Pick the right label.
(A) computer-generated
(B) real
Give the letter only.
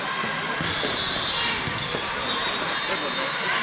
B